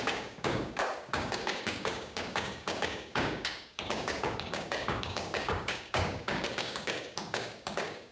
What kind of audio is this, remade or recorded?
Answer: remade